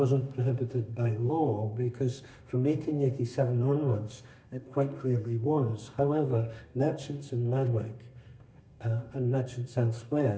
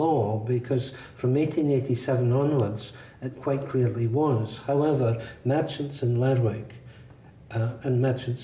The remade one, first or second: first